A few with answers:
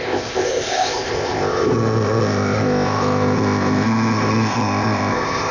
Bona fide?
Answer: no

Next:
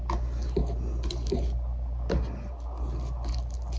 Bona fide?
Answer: yes